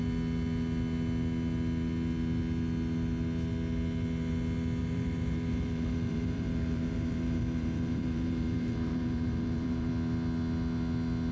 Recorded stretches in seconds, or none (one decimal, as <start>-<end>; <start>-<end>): 0.0-4.8; 9.9-11.3